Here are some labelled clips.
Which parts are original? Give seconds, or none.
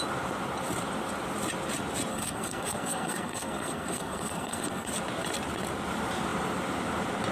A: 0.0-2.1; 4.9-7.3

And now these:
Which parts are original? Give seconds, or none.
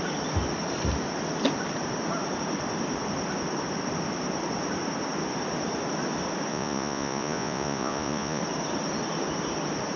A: 0.0-6.5; 8.4-10.0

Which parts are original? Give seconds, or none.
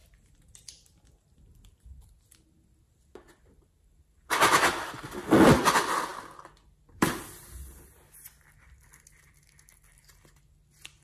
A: 0.0-11.0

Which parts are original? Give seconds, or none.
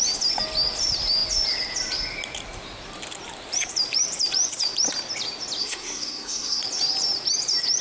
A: 0.0-5.6; 6.6-7.8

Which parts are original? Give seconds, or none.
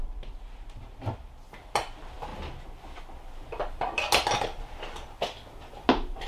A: 0.0-6.3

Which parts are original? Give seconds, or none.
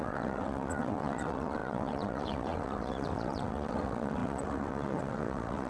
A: none